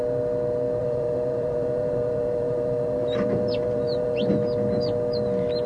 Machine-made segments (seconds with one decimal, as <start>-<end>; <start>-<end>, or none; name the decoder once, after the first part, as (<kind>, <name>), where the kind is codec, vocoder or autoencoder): 0.8-4.2 (vocoder, BigVGAN v2)